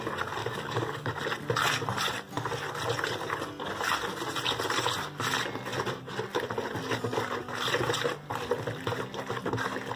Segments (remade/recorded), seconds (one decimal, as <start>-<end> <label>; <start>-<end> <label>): 0.0-0.4 recorded; 0.4-1.2 remade; 1.2-10.0 recorded